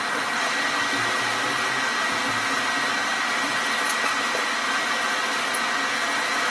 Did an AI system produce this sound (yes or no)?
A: no